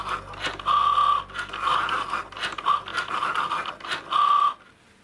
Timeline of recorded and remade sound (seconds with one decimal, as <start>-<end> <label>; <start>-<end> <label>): 0.0-5.0 recorded